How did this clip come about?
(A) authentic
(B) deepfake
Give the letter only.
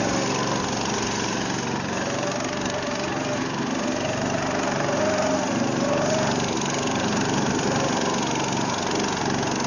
A